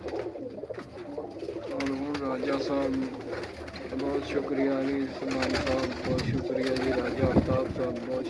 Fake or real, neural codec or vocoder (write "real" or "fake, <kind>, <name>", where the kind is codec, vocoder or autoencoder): real